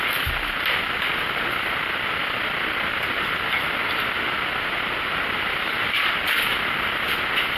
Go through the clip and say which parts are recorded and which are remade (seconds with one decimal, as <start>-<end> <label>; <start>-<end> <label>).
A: 0.0-2.2 recorded; 2.2-3.2 remade; 3.2-7.6 recorded